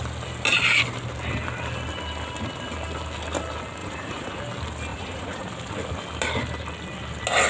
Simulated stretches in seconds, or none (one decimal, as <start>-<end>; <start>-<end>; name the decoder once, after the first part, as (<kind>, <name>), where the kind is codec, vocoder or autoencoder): 3.8-4.4 (vocoder, Vocos); 4.9-5.5